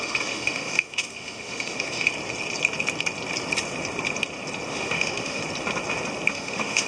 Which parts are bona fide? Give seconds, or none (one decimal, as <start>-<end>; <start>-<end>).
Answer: 2.1-4.7; 5.4-6.3